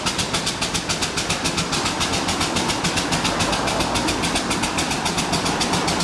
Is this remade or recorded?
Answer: recorded